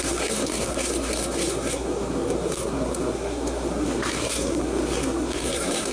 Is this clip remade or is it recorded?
remade